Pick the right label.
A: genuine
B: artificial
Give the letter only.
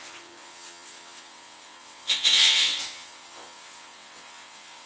B